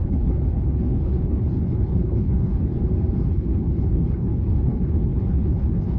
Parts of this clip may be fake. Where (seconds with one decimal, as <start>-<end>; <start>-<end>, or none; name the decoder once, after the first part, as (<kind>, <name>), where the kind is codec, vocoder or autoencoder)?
0.0-2.7 (codec, HILCodec); 3.3-6.0